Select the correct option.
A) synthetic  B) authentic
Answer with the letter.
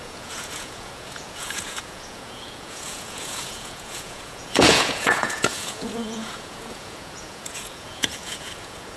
A